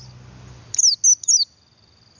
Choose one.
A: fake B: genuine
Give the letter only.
B